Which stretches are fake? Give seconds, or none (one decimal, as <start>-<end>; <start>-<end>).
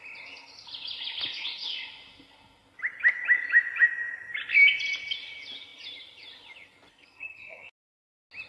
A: 6.9-7.7